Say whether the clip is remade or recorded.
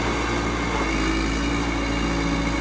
recorded